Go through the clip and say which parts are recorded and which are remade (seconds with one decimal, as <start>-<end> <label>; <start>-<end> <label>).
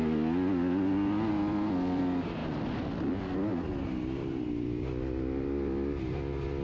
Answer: 0.0-1.3 recorded; 1.3-2.0 remade; 2.0-2.4 recorded; 2.4-3.1 remade; 3.1-3.5 recorded; 3.5-4.9 remade; 4.9-6.6 recorded